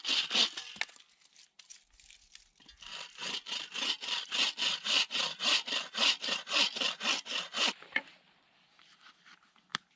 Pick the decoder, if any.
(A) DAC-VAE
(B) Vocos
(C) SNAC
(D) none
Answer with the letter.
D